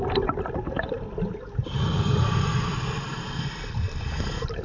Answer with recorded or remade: recorded